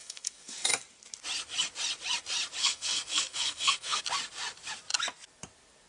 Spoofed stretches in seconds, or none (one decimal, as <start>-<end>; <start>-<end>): 0.0-0.7; 2.6-4.0